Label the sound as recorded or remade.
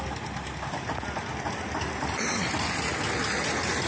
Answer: recorded